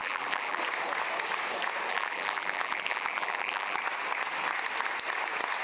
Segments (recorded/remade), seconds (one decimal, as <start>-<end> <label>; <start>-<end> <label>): 0.0-0.6 remade; 0.6-1.9 recorded; 1.9-3.8 remade; 3.8-5.6 recorded